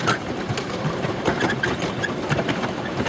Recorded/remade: recorded